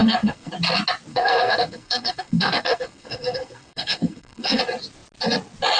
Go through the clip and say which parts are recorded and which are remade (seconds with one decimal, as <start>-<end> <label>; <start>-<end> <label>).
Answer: 0.0-0.5 remade; 0.5-1.1 recorded; 1.1-4.6 remade; 4.6-5.8 recorded